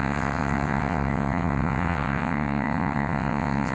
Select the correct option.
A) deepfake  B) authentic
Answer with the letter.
A